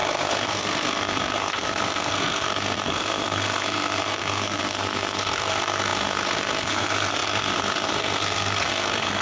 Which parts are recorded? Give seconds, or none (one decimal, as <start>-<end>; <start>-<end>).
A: none